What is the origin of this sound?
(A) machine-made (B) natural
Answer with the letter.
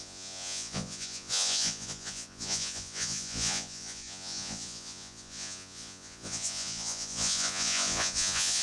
A